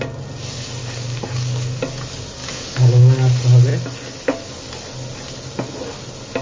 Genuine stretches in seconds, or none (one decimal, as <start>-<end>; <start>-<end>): 0.0-0.8; 1.8-2.4; 3.0-6.4